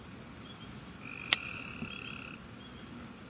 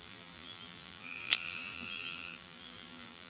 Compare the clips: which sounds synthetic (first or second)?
second